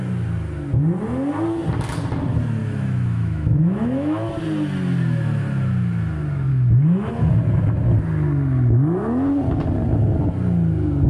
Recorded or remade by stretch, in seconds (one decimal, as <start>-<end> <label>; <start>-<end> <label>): 0.0-2.6 recorded; 2.6-4.3 remade; 4.3-6.5 recorded; 6.5-7.1 remade; 7.1-11.1 recorded